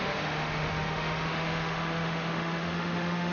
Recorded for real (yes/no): no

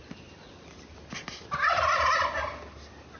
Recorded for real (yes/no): yes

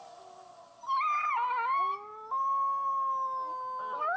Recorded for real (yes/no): yes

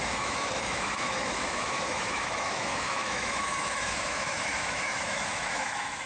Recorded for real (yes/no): no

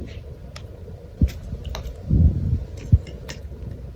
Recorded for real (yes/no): yes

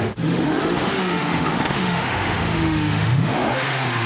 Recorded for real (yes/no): no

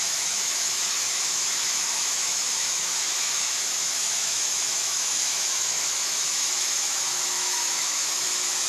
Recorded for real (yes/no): no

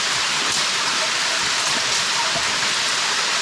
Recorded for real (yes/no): yes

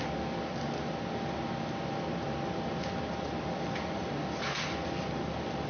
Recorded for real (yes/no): yes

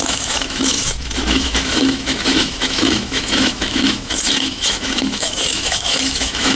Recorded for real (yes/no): no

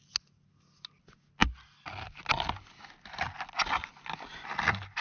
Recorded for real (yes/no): yes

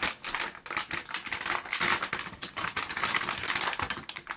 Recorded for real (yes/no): yes